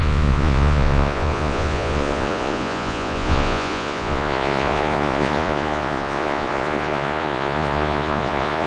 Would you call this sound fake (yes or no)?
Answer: yes